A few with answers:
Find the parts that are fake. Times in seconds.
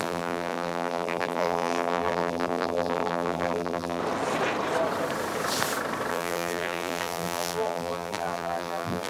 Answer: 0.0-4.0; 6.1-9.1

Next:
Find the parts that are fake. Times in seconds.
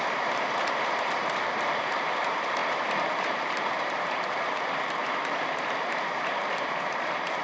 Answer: 0.0-7.4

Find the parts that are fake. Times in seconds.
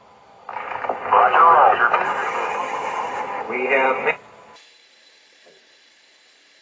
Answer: 0.0-2.2; 2.9-6.6